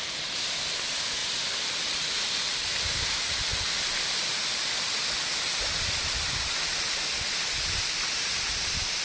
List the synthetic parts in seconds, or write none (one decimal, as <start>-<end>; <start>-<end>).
0.0-1.2; 5.6-6.7; 8.3-9.0